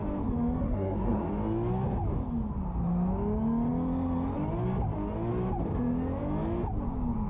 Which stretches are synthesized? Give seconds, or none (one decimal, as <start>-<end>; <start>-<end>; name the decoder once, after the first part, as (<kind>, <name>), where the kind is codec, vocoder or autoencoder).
0.6-1.3 (codec, SNAC)